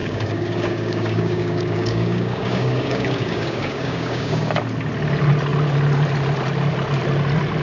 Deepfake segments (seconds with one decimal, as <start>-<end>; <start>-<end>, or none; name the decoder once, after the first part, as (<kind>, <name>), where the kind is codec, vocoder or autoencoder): 0.0-4.6 (codec, DAC)